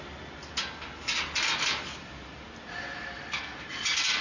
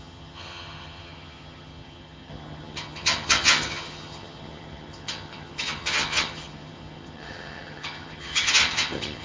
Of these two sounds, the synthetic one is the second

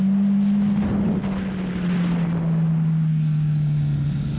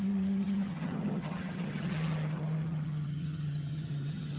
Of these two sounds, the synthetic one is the second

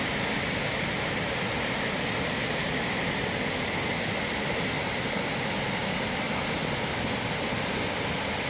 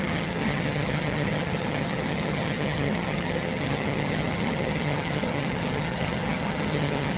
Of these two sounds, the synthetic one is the second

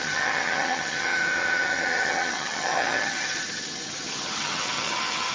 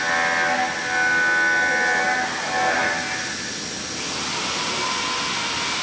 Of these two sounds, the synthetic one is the first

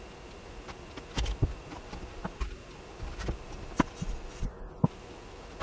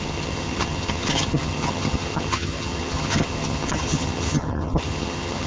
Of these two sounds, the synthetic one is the second